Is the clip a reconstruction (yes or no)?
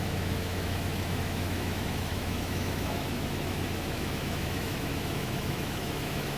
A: yes